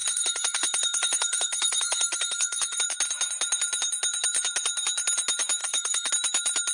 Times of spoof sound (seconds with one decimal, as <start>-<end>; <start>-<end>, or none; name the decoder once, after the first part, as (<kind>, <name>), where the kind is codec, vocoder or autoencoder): 0.0-2.8 (codec, SNAC); 5.6-6.1